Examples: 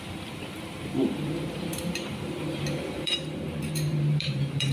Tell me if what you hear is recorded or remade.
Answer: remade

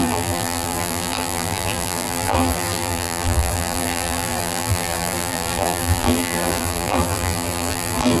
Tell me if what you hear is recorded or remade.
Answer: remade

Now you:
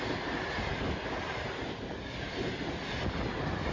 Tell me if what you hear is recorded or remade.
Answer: recorded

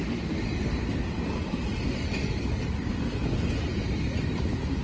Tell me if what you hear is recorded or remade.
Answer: recorded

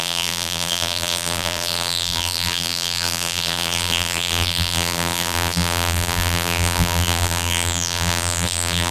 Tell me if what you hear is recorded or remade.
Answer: remade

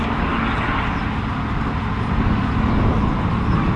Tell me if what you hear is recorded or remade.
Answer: recorded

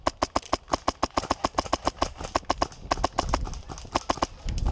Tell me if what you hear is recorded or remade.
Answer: recorded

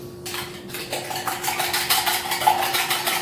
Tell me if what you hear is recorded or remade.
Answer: recorded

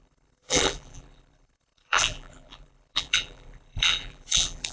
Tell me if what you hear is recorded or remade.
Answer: remade